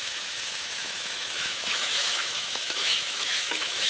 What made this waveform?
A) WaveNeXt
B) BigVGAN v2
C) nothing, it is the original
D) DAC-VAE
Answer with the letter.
D